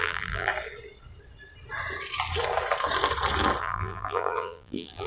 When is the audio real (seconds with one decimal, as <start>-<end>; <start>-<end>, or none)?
0.5-3.6